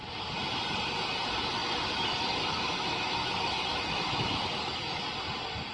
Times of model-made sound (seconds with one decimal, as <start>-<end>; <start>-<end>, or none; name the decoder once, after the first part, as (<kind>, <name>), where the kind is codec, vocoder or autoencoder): 1.6-5.0 (autoencoder, DAC-VAE)